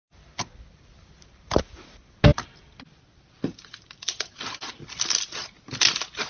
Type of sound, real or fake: real